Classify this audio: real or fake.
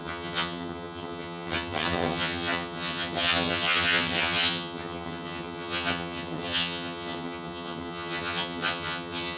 fake